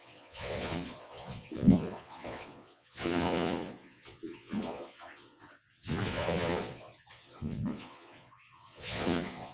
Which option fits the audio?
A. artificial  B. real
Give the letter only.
A